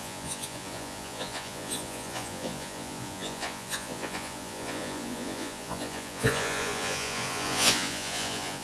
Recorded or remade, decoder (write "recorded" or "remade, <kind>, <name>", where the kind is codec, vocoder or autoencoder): remade, vocoder, Vocos